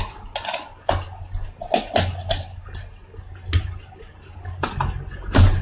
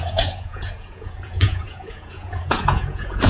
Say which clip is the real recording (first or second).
first